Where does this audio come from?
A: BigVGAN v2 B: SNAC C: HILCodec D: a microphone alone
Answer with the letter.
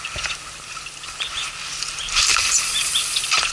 D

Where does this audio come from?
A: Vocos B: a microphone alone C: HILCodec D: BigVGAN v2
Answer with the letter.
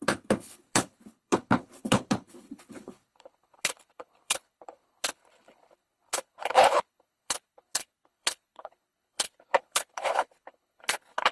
C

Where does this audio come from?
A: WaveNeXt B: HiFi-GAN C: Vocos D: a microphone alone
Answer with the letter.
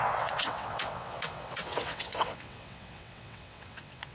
A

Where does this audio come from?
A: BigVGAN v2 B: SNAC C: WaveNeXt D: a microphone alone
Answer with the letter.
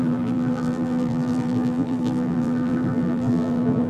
A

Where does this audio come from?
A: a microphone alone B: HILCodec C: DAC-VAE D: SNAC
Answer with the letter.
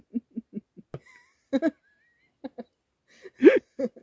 A